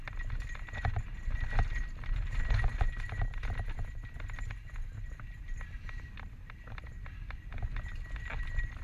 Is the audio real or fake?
real